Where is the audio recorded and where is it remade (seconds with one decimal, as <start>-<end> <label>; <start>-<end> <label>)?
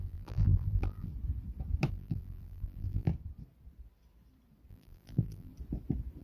0.0-1.1 remade; 1.1-1.9 recorded; 1.9-3.1 remade; 3.1-4.7 recorded; 4.7-5.5 remade; 5.5-6.2 recorded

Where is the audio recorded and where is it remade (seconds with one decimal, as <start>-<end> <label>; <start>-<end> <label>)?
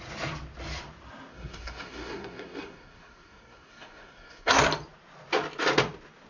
0.0-1.3 recorded; 1.3-4.6 remade; 4.6-6.3 recorded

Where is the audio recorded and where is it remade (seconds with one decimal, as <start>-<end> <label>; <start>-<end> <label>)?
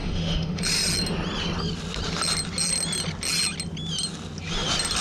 0.0-0.6 remade; 0.6-5.0 recorded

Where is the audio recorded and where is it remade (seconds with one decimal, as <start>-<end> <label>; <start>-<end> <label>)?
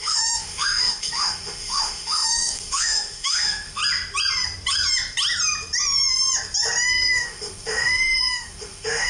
0.0-3.8 remade; 3.8-6.9 recorded; 6.9-9.1 remade